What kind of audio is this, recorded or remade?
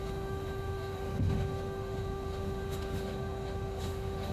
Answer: remade